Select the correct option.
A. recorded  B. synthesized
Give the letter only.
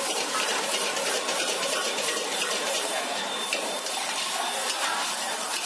B